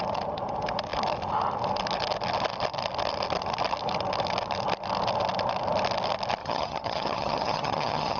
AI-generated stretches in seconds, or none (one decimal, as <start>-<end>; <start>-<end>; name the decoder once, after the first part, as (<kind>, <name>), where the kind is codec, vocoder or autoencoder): 6.4-8.2 (vocoder, HiFi-GAN)